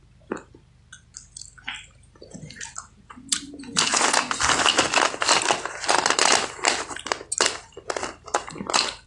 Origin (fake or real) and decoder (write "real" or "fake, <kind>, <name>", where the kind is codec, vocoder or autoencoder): real